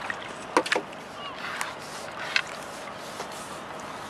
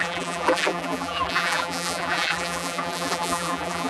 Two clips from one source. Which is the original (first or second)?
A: first